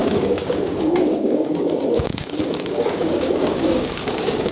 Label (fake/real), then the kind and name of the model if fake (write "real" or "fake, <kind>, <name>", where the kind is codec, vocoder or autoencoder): fake, codec, DAC